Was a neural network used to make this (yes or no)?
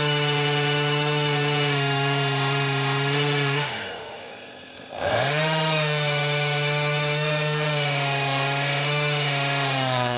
yes